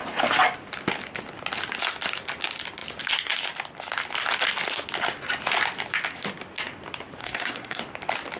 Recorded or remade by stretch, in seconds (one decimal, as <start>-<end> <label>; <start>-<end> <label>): 0.0-7.2 recorded; 7.2-7.8 remade; 7.8-8.4 recorded